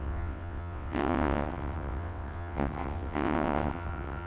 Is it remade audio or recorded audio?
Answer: remade